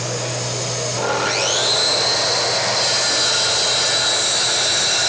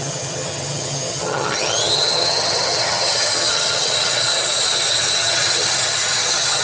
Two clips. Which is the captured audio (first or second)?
first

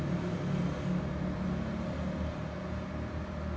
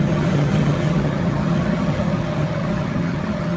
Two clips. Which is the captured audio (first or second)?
first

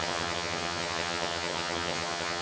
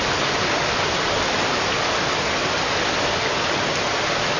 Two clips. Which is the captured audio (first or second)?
second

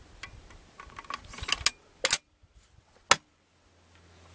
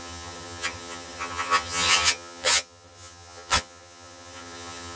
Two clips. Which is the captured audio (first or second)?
first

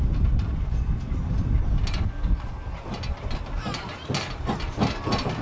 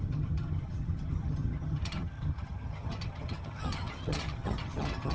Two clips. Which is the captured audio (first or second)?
first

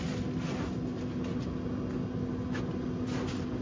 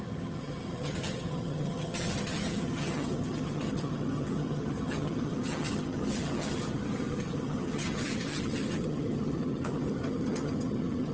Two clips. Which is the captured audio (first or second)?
first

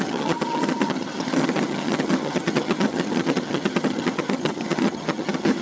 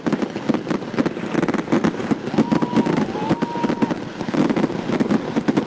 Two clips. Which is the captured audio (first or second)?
second